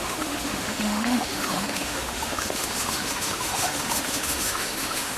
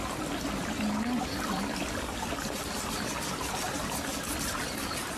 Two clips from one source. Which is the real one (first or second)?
second